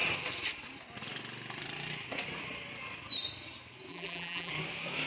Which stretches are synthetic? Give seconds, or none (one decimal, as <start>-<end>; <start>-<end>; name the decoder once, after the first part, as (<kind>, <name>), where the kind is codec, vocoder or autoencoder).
3.9-4.5 (vocoder, BigVGAN v2)